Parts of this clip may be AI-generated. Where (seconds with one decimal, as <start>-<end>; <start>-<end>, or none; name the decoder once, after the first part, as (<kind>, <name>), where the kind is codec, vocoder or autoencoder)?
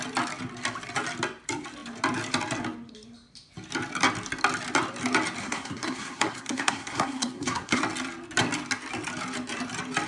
5.4-7.8 (codec, SNAC)